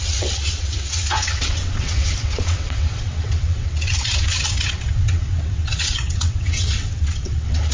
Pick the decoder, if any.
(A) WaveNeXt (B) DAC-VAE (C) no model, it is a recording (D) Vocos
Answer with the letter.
A